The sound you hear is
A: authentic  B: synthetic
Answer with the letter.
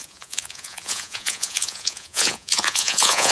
B